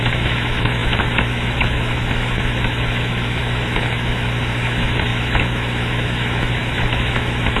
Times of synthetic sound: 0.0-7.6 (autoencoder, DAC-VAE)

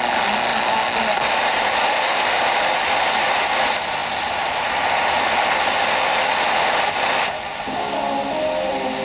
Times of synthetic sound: 1.9-2.4 (autoencoder, DAC-VAE)

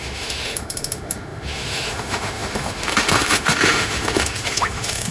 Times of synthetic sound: 0.0-5.1 (autoencoder, DAC-VAE)

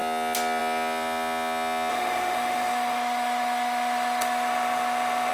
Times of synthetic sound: 1.9-5.3 (autoencoder, DAC-VAE)

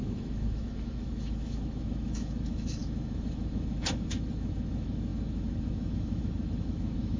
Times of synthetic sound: 0.0-7.2 (autoencoder, DAC-VAE)

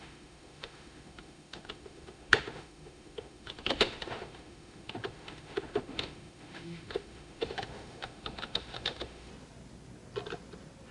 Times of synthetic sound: 0.0-9.3 (autoencoder, DAC-VAE)